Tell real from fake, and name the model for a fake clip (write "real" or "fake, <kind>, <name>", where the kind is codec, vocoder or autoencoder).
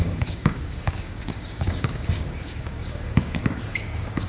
fake, codec, DAC